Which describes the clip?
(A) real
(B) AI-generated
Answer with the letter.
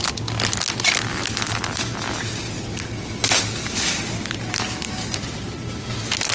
A